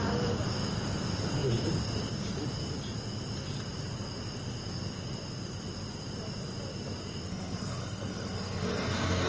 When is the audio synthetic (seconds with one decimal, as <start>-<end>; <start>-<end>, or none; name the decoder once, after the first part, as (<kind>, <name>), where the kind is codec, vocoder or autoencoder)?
7.3-9.3 (codec, SNAC)